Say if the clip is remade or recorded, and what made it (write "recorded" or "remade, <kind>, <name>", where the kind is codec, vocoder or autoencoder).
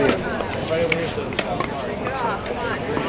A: remade, vocoder, BigVGAN v2